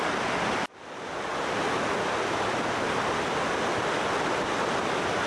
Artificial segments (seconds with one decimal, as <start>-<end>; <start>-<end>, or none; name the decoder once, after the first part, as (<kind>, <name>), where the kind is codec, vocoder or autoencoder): none